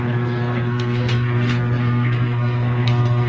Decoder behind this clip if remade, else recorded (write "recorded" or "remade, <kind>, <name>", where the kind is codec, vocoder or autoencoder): remade, codec, SNAC